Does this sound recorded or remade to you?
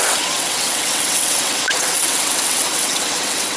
remade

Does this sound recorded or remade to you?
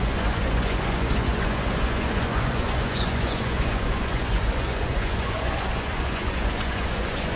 remade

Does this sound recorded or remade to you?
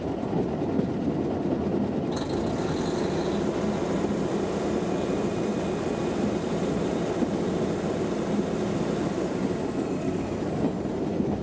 recorded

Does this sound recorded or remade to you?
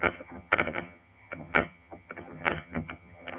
remade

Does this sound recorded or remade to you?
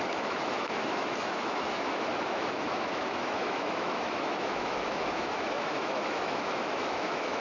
remade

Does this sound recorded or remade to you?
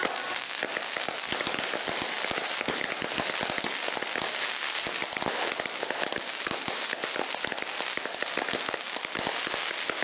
recorded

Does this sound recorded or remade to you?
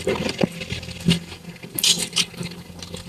recorded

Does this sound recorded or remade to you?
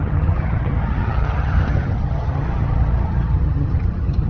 remade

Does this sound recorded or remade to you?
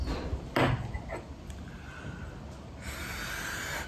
recorded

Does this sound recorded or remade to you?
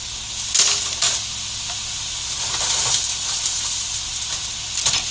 recorded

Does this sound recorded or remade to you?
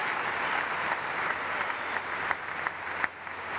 recorded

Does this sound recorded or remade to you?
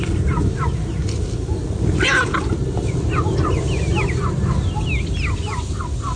recorded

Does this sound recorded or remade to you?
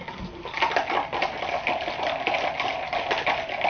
recorded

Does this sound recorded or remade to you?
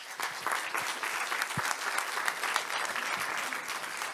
recorded